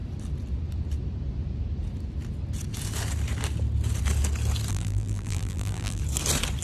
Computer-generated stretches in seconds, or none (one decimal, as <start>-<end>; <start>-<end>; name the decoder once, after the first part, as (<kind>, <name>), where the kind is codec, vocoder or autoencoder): 4.7-6.0 (vocoder, BigVGAN v2)